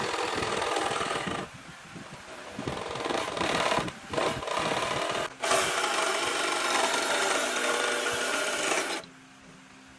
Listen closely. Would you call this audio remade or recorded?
recorded